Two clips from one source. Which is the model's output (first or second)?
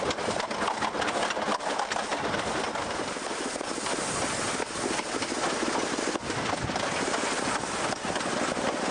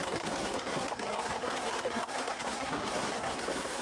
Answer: second